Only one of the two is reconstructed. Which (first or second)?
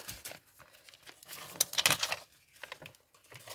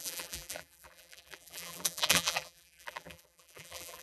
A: second